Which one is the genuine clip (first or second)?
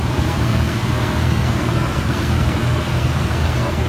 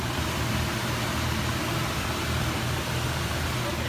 second